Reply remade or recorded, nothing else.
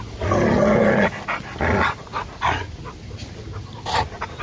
recorded